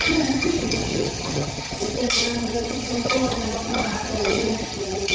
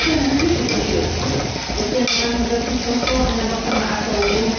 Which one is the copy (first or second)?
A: first